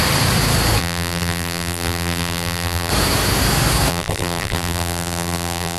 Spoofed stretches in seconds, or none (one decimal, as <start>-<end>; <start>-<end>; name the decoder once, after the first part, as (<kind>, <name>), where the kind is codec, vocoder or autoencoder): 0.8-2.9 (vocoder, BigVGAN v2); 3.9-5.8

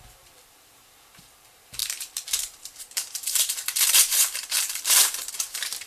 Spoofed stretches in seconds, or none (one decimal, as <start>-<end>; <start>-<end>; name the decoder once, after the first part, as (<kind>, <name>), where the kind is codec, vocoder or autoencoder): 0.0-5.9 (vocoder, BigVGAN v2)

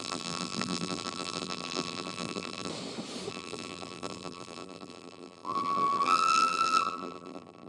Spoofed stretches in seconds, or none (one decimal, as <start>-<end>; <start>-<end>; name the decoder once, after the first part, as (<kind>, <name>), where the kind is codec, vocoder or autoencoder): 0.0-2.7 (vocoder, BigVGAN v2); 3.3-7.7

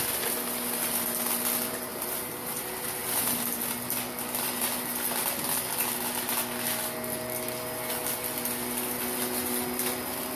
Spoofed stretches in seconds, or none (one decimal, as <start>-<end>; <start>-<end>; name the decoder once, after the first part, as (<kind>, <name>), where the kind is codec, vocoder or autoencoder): 1.9-2.7 (vocoder, BigVGAN v2)